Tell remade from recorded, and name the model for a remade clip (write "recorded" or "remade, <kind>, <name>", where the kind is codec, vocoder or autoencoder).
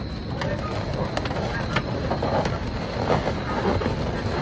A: recorded